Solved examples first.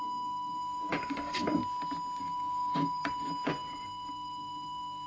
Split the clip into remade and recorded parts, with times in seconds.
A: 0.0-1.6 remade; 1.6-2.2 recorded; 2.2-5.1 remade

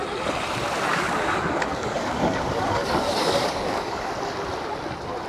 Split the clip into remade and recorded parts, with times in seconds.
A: 0.0-0.9 recorded; 0.9-4.1 remade; 4.1-5.3 recorded

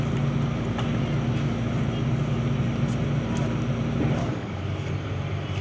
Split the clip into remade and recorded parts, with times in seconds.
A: 0.0-4.2 recorded; 4.2-4.9 remade; 4.9-5.6 recorded

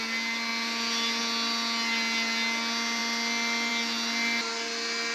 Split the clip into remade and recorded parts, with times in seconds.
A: 0.0-5.1 recorded

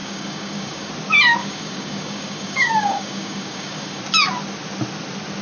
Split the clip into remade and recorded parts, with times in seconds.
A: 0.0-0.9 remade; 0.9-1.4 recorded; 1.4-4.0 remade; 4.0-5.4 recorded

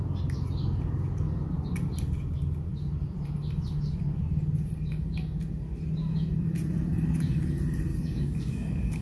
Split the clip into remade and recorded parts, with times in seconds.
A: 0.0-7.9 recorded; 7.9-9.0 remade

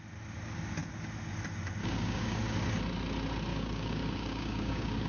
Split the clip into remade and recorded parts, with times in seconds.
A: 0.0-1.8 recorded; 1.8-2.4 remade; 2.4-3.5 recorded; 3.5-5.1 remade